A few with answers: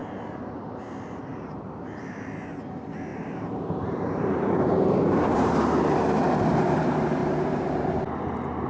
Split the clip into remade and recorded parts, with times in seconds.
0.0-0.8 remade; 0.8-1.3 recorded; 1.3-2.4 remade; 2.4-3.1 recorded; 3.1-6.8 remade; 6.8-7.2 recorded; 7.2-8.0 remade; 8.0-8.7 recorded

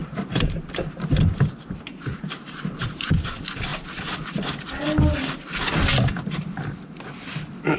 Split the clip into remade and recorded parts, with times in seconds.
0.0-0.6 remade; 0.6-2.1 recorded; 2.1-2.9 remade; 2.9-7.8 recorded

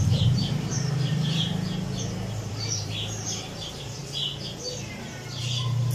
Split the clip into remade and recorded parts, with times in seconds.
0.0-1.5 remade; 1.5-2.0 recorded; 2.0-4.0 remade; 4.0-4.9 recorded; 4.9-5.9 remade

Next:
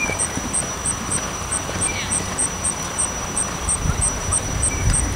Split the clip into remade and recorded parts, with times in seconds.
0.0-5.2 remade